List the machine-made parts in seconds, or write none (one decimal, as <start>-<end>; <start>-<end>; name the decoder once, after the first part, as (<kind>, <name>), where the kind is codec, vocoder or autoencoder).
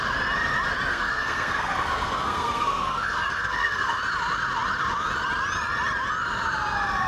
0.9-4.0 (codec, SNAC)